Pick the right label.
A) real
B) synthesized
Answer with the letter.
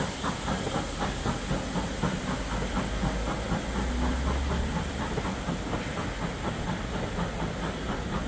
A